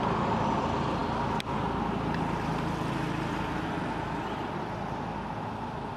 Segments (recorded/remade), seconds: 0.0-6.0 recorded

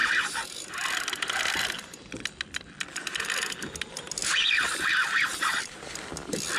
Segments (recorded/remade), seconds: 0.0-0.7 remade; 0.7-4.2 recorded; 4.2-5.6 remade; 5.6-6.6 recorded

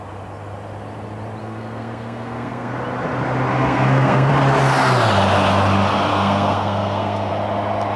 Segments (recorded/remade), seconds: 0.0-1.4 recorded; 1.4-2.7 remade; 2.7-3.5 recorded; 3.5-4.3 remade; 4.3-6.1 recorded; 6.1-7.3 remade; 7.3-8.0 recorded

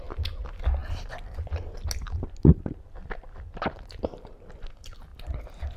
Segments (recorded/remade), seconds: 0.0-5.8 recorded

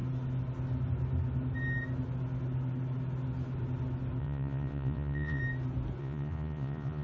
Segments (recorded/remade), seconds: 0.0-4.2 recorded; 4.2-5.4 remade; 5.4-6.0 recorded; 6.0-7.0 remade

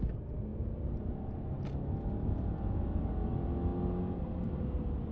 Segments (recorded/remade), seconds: 0.0-5.1 recorded

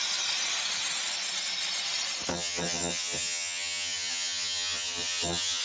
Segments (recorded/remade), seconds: 0.0-2.3 recorded; 2.3-5.6 remade